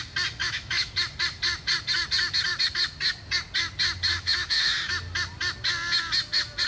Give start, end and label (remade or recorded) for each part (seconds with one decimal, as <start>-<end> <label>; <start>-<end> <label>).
0.0-0.4 recorded; 0.4-0.9 remade; 0.9-4.1 recorded; 4.1-4.9 remade; 4.9-6.7 recorded